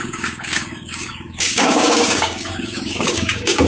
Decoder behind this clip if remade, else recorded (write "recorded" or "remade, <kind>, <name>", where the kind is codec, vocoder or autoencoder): remade, codec, DAC